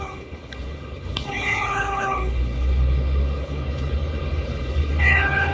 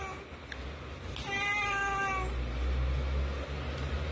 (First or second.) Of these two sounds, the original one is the second